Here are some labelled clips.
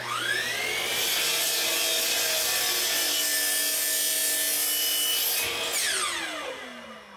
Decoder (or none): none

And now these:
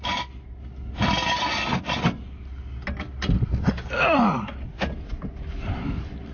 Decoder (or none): none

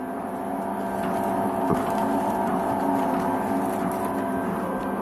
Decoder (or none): none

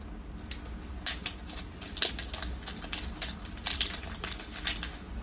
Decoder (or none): none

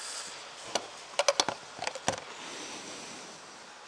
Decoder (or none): none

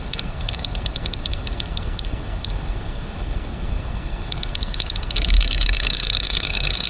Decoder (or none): codec, SNAC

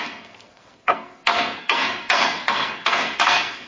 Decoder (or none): codec, SNAC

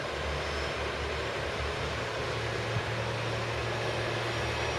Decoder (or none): none